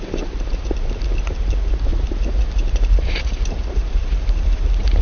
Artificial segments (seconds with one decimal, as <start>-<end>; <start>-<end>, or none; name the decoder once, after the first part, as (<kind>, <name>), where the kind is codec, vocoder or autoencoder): 1.9-5.0 (vocoder, BigVGAN v2)